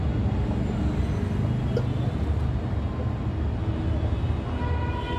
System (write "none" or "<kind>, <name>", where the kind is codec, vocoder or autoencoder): none